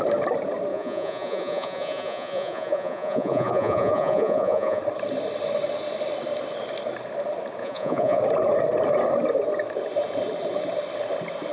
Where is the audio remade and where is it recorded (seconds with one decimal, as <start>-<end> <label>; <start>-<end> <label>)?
0.0-0.7 recorded; 0.7-4.8 remade; 4.8-7.6 recorded; 7.6-8.2 remade; 8.2-11.5 recorded